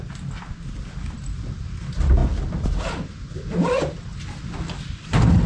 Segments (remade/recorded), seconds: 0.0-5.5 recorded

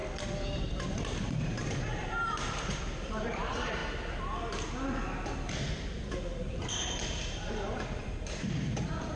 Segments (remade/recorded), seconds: 0.0-0.6 recorded; 0.6-3.8 remade; 3.8-6.7 recorded; 6.7-9.2 remade

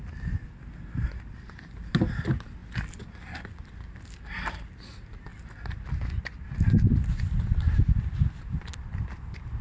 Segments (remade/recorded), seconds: 0.0-9.6 recorded

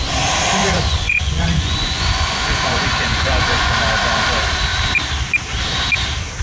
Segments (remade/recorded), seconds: 0.0-0.6 recorded; 0.6-3.7 remade; 3.7-6.4 recorded

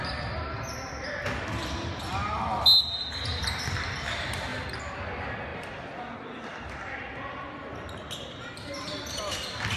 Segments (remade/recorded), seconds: 0.0-9.8 recorded

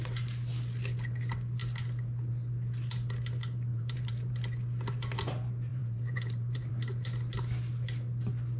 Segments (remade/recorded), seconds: 0.0-3.7 recorded; 3.7-4.3 remade; 4.3-5.7 recorded; 5.7-6.7 remade; 6.7-8.6 recorded

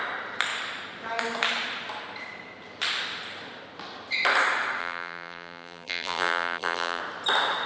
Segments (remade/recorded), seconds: 0.0-4.8 recorded; 4.8-7.0 remade; 7.0-7.7 recorded

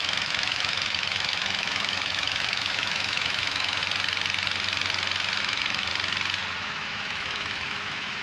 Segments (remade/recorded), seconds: 0.0-3.8 remade; 3.8-5.4 recorded; 5.4-5.9 remade; 5.9-6.6 recorded; 6.6-8.2 remade